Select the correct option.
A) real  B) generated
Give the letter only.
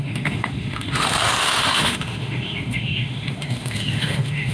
B